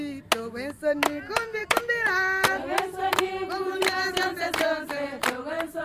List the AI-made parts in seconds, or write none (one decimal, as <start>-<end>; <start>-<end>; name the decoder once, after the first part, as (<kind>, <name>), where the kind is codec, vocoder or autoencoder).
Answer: 1.6-3.8 (vocoder, BigVGAN v2)